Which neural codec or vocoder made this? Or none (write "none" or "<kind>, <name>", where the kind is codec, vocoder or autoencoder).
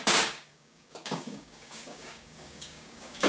codec, DAC